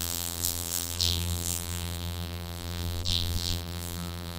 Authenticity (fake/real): fake